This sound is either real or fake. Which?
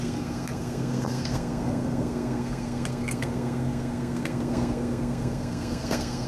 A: fake